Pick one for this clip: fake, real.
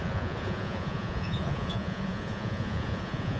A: fake